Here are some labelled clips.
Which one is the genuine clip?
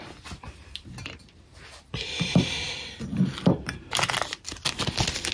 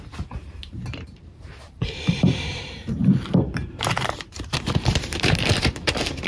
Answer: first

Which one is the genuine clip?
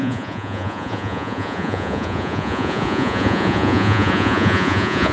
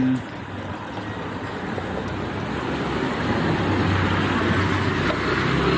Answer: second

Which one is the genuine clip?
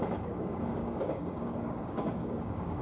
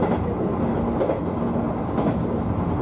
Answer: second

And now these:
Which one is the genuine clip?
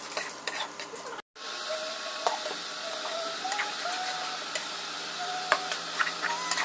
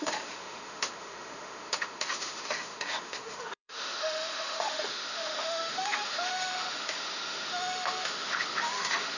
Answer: first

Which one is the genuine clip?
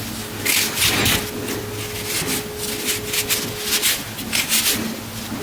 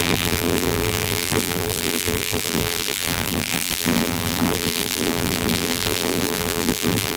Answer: first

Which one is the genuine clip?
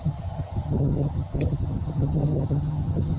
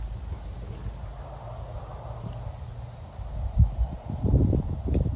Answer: second